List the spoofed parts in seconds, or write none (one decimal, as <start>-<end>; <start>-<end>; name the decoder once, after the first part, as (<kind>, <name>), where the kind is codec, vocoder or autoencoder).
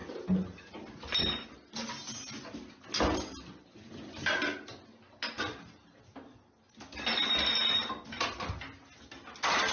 none